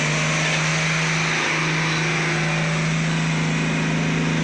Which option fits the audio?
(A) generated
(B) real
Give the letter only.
B